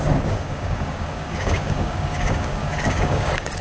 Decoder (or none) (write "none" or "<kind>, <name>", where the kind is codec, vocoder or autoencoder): codec, DAC